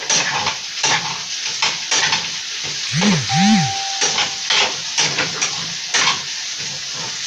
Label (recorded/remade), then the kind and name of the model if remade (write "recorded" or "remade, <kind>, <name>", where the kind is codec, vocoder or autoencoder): recorded